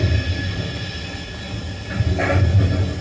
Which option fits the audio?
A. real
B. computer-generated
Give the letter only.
A